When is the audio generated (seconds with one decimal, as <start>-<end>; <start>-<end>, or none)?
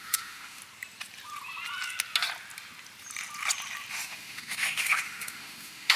0.0-0.6; 3.9-6.0